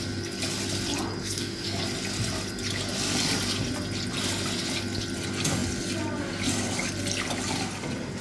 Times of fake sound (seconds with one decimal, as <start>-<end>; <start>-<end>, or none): 1.2-1.8